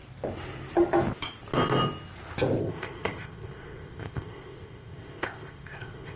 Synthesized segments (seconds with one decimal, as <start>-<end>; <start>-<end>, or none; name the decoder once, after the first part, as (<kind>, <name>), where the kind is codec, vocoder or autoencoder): 2.6-6.2 (codec, ZipCodec)